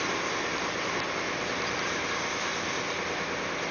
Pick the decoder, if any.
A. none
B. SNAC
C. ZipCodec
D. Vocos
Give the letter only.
A